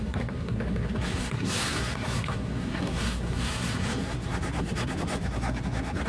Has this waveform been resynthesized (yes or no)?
yes